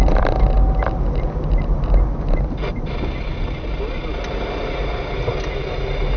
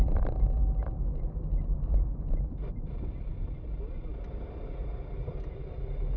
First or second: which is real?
first